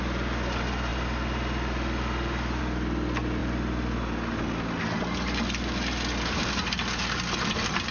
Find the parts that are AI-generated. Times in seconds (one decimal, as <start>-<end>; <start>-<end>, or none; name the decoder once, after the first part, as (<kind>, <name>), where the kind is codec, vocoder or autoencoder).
none